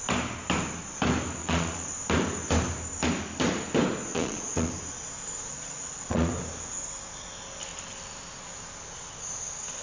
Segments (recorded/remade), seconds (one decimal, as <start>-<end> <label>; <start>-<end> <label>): 0.0-1.4 recorded; 1.4-1.9 remade; 1.9-4.1 recorded; 4.1-4.7 remade; 4.7-5.5 recorded; 5.5-6.3 remade; 6.3-9.8 recorded